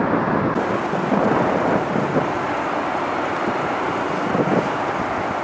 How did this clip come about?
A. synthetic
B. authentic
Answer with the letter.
B